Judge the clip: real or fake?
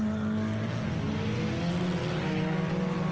real